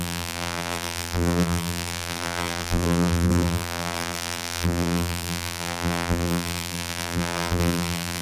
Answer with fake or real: fake